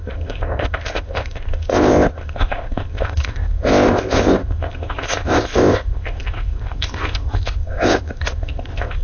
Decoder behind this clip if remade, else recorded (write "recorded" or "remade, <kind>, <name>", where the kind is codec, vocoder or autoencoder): remade, codec, ZipCodec